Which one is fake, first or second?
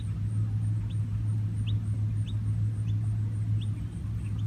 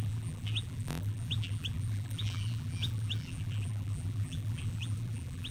second